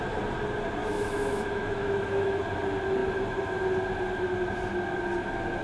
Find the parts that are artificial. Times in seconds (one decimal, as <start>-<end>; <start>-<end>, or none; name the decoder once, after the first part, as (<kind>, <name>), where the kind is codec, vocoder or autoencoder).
0.8-2.4 (autoencoder, DAC-VAE)